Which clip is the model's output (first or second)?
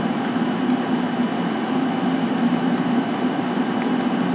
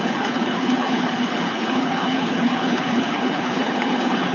second